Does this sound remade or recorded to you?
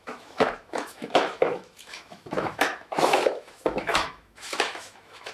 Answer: remade